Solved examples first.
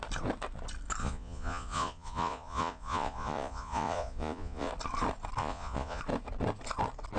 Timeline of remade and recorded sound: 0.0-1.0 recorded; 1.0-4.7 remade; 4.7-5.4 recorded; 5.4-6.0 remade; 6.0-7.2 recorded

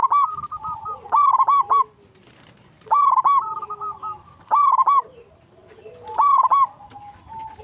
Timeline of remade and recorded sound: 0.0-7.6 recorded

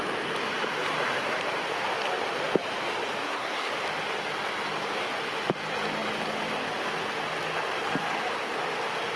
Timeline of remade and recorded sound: 0.0-3.2 recorded; 3.2-3.7 remade; 3.7-9.2 recorded

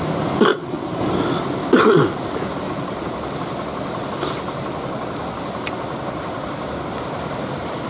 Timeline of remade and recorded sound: 0.0-0.5 recorded; 0.5-1.0 remade; 1.0-7.9 recorded

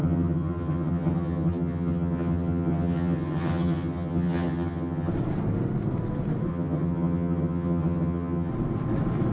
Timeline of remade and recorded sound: 0.0-5.1 remade; 5.1-6.5 recorded; 6.5-8.5 remade; 8.5-9.3 recorded